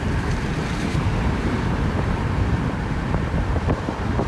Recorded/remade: remade